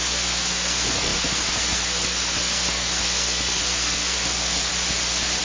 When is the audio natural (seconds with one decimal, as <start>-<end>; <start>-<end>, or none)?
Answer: 4.7-5.4